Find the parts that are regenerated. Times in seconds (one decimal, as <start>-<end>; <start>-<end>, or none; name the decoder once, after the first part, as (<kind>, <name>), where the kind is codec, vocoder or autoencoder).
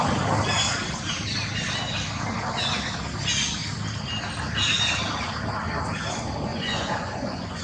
6.5-7.6 (vocoder, Vocos)